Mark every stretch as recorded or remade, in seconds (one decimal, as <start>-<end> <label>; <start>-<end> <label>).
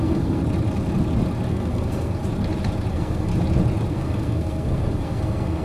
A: 0.0-0.4 remade; 0.4-1.5 recorded; 1.5-2.2 remade; 2.2-2.9 recorded; 2.9-3.3 remade; 3.3-3.9 recorded; 3.9-5.6 remade